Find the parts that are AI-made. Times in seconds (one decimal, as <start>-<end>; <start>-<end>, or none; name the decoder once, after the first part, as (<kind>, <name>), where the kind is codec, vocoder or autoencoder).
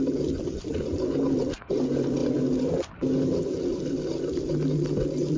none